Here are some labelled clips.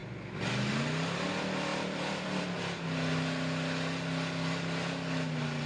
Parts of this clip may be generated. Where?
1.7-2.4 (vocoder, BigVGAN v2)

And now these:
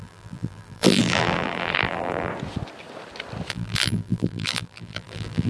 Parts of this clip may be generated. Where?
0.0-2.3 (vocoder, BigVGAN v2); 3.5-5.5

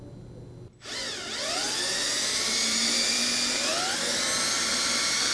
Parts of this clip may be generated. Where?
none